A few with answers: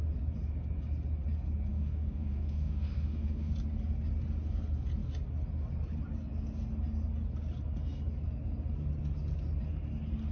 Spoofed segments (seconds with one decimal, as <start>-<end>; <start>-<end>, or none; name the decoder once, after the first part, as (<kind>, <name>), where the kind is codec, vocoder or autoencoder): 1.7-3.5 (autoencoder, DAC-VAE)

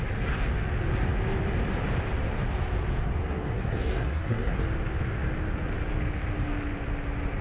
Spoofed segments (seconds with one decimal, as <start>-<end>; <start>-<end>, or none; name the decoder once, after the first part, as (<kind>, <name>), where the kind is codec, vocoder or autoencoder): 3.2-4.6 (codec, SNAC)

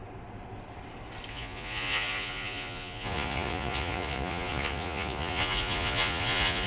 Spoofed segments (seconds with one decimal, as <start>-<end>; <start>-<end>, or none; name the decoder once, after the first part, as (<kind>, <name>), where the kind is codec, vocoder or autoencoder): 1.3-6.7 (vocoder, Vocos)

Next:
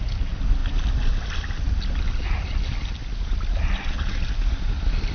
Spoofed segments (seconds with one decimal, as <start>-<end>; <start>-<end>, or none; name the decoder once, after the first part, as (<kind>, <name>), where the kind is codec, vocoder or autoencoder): none

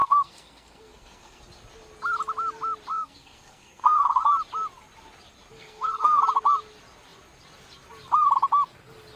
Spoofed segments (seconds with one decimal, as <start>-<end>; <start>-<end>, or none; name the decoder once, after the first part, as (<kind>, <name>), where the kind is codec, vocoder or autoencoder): 0.0-1.4 (codec, SNAC); 2.9-4.3; 5.5-6.2